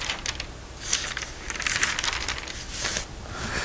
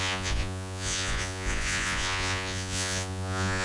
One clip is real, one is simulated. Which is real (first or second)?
first